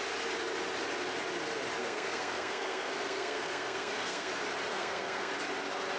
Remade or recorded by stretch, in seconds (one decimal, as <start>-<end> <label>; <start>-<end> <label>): 0.0-1.8 recorded; 1.8-4.3 remade; 4.3-4.7 recorded; 4.7-5.3 remade; 5.3-6.0 recorded